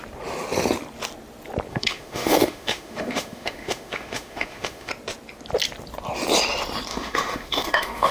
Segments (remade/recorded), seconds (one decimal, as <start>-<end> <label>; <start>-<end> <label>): 0.0-1.7 recorded; 1.7-4.9 remade; 4.9-6.9 recorded; 6.9-8.1 remade